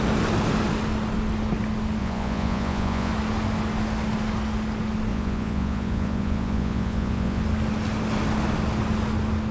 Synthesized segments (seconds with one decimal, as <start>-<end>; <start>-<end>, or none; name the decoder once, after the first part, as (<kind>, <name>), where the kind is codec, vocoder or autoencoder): 2.0-3.1 (vocoder, Vocos); 5.1-7.4